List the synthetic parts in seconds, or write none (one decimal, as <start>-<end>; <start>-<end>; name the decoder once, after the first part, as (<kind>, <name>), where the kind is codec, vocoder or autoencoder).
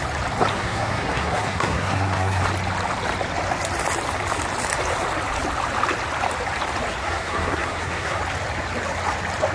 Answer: 0.5-2.4 (codec, SNAC); 7.0-8.2